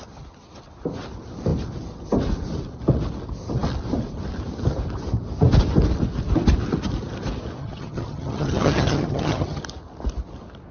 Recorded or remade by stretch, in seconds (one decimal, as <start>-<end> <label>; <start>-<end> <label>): 0.0-7.6 recorded; 7.6-9.6 remade; 9.6-10.7 recorded